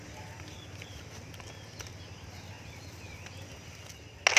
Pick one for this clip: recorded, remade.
recorded